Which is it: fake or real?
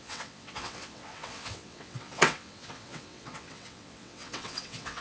fake